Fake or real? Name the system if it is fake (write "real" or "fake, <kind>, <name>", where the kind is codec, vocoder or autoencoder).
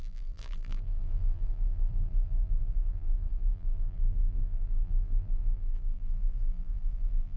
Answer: fake, vocoder, BigVGAN v2